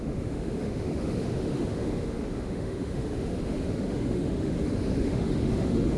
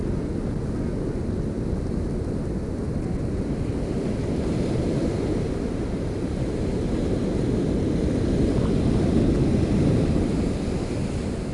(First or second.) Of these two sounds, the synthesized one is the first